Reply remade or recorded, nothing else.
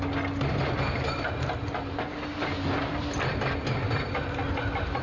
recorded